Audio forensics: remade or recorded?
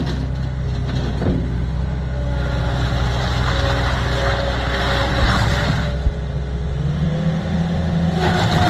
recorded